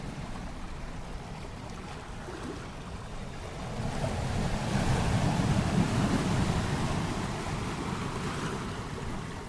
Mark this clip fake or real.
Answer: real